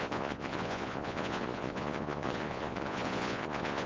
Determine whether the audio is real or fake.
fake